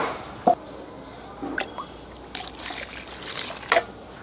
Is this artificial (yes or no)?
no